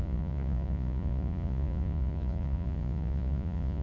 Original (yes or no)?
no